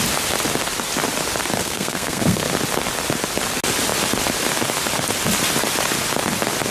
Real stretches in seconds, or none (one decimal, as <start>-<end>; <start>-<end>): 0.0-1.6; 2.5-6.7